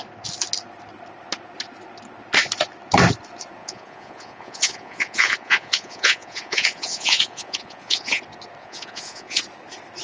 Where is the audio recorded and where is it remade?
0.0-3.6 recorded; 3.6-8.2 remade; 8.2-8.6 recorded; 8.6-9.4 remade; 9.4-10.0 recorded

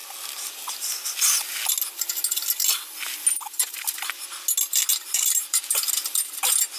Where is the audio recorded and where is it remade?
0.0-4.9 recorded; 4.9-5.9 remade; 5.9-6.8 recorded